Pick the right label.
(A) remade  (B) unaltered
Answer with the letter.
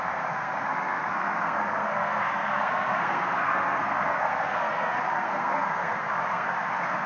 A